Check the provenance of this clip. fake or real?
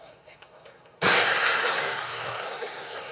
fake